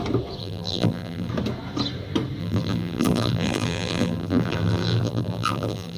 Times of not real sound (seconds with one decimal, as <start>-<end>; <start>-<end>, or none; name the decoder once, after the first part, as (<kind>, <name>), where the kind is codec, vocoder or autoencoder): 0.4-1.3 (vocoder, BigVGAN v2); 2.4-6.0